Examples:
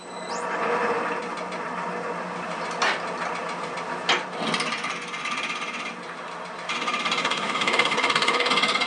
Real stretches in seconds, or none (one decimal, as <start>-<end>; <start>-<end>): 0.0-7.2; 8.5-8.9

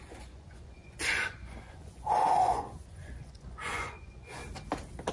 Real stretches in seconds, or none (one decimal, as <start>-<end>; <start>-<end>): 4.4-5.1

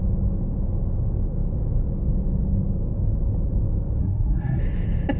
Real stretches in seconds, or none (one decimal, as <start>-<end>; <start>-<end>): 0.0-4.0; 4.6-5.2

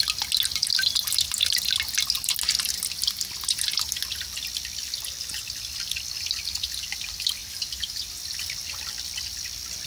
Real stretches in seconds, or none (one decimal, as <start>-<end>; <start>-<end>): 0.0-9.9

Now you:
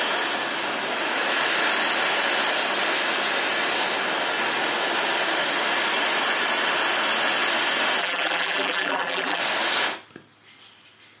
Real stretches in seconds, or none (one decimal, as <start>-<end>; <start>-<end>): 0.0-8.0; 9.4-11.2